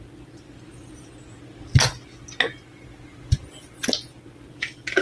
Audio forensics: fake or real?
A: real